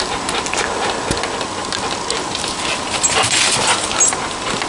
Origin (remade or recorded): recorded